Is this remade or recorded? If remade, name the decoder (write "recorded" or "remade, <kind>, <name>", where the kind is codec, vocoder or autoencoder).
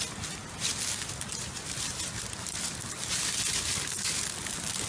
recorded